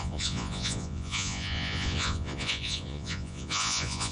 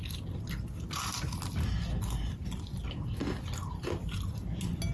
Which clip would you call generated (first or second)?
first